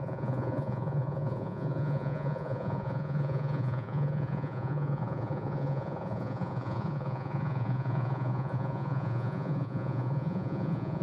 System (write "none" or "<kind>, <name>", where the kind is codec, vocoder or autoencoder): vocoder, Vocos